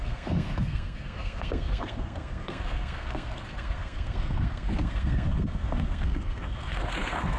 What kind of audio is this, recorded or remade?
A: remade